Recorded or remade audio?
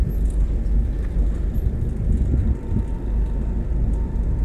recorded